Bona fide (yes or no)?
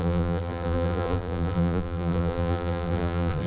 no